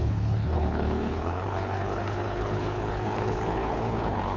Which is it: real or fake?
fake